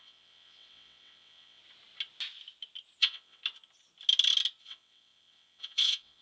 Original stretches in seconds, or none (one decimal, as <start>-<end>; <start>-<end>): 1.6-3.0; 3.4-4.6